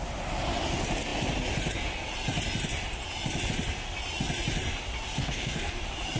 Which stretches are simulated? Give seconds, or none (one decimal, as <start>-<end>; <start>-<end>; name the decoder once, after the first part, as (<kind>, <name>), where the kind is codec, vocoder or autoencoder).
5.2-5.8 (codec, DAC)

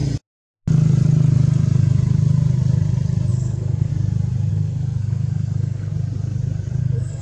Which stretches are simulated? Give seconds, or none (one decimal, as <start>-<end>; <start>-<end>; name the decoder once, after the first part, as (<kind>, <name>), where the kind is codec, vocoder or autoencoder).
3.3-3.9 (codec, SNAC); 4.5-5.9; 6.8-7.2

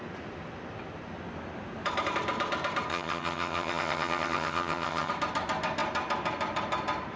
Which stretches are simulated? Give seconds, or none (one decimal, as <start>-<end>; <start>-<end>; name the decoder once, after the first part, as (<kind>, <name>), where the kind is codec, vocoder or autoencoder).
2.9-5.1 (vocoder, HiFi-GAN)

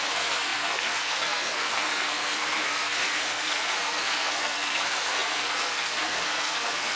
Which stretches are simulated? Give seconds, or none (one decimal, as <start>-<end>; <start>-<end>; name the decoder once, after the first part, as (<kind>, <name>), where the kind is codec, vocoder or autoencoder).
0.0-7.0 (codec, SNAC)

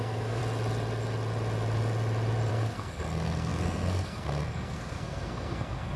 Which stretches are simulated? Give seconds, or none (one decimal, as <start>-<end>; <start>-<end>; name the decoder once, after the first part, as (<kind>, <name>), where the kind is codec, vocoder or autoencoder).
0.0-0.4 (codec, SNAC); 2.5-6.0

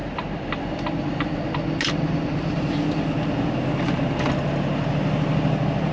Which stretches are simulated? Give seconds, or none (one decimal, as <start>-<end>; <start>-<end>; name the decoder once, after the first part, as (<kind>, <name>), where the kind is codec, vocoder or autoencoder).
none

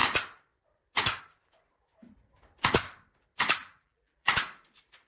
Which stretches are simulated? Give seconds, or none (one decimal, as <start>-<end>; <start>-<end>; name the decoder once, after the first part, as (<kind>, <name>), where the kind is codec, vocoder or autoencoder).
3.6-4.3 (vocoder, BigVGAN v2)

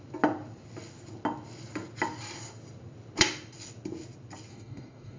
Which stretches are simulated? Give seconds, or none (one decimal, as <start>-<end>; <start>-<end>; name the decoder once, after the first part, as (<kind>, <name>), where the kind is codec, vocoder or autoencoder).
4.5-5.2 (codec, DAC)